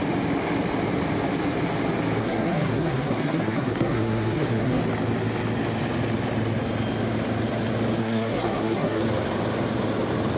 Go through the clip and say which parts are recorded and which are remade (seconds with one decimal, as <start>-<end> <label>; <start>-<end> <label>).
0.0-2.2 recorded; 2.2-4.8 remade; 4.8-8.0 recorded; 8.0-9.0 remade; 9.0-10.4 recorded